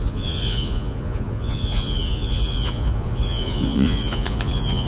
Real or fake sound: fake